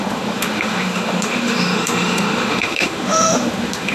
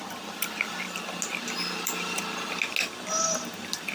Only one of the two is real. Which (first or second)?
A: second